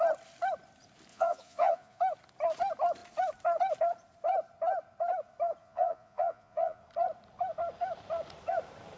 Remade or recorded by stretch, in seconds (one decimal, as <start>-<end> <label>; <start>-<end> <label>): 0.0-1.1 recorded; 1.1-2.0 remade; 2.0-5.6 recorded; 5.6-6.8 remade; 6.8-9.0 recorded